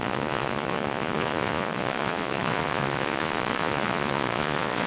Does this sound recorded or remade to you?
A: remade